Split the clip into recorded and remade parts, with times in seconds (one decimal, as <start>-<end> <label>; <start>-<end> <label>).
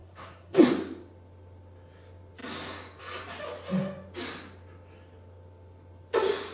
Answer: 0.0-0.7 remade; 0.7-6.5 recorded